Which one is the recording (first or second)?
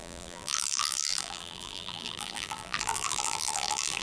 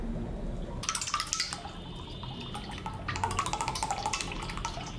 second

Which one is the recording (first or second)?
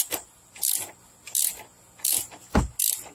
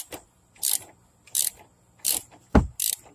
first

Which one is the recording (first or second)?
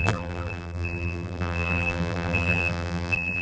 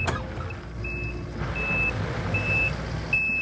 second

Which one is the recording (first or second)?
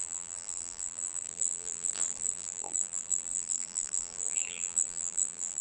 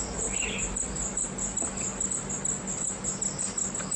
second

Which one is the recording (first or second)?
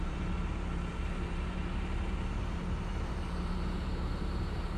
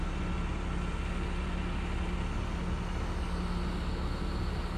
second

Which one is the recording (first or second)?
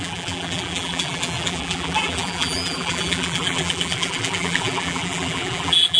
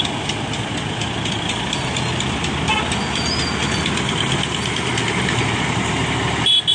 second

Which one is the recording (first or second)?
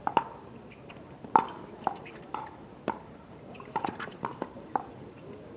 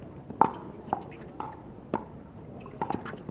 second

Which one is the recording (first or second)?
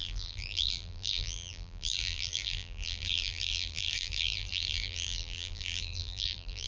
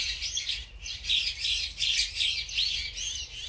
second